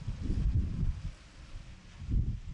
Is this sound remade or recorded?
recorded